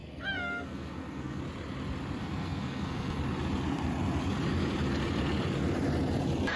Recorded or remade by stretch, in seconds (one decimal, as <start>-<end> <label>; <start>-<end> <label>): 0.0-1.4 remade; 1.4-2.2 recorded; 2.2-3.2 remade; 3.2-6.6 recorded